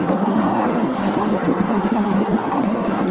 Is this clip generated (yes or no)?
yes